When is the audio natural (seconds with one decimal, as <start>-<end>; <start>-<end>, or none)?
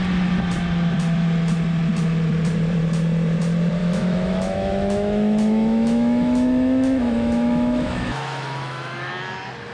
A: 0.0-3.8; 9.1-9.7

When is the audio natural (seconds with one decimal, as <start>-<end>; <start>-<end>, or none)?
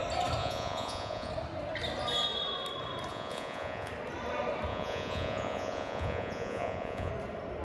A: 0.0-0.4; 1.3-3.1; 3.9-4.7; 7.1-7.6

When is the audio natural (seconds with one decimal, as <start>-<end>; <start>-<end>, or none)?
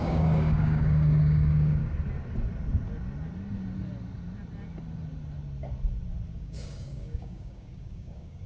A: 1.8-6.3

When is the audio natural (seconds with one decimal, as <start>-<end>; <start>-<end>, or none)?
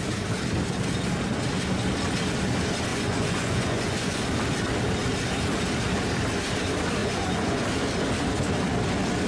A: 0.0-2.9; 4.2-7.0; 7.6-9.3